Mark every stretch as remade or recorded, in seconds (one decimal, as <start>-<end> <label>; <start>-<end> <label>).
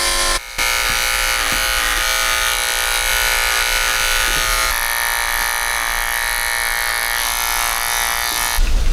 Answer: 0.0-8.9 recorded